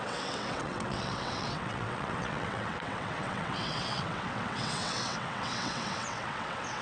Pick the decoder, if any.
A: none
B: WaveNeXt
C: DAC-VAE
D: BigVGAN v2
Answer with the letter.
B